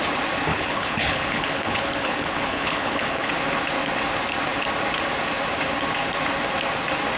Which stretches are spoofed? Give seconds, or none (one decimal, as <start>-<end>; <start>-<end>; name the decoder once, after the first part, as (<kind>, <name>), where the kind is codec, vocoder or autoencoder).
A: 0.5-3.3 (codec, HILCodec)